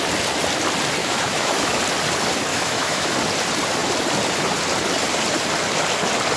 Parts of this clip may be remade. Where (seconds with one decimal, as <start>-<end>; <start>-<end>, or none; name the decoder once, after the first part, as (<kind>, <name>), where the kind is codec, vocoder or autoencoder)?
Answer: 1.0-1.8 (autoencoder, DAC-VAE); 2.5-3.1